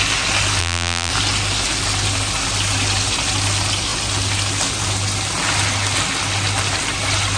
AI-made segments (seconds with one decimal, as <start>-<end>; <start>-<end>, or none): 0.6-1.1